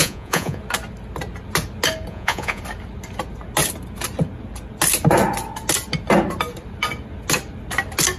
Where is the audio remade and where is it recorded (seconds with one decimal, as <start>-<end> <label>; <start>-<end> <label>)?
0.0-0.6 remade; 0.6-2.1 recorded; 2.1-2.6 remade; 2.6-8.2 recorded